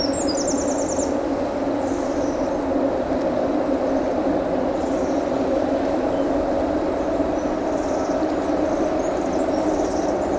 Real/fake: real